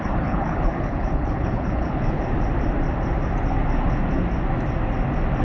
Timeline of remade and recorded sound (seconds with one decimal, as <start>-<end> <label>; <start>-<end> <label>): 0.0-2.2 remade; 2.2-5.4 recorded